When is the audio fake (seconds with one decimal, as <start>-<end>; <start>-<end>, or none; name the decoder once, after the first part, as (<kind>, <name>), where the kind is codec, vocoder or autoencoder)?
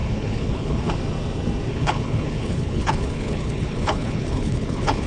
0.0-0.9 (codec, HILCodec); 1.7-5.1